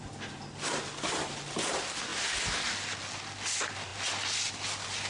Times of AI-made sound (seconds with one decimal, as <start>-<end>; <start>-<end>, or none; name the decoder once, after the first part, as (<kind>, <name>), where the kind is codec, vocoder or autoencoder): none